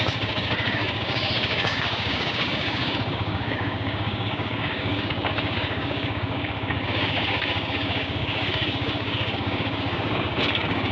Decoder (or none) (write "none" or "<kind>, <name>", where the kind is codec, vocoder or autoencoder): codec, DAC